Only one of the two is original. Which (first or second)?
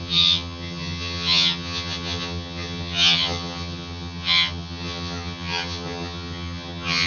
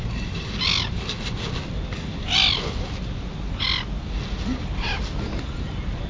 second